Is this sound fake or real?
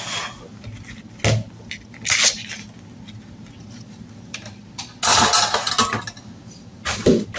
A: real